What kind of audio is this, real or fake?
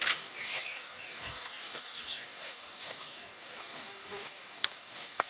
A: fake